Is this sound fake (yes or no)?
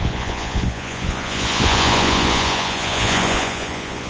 yes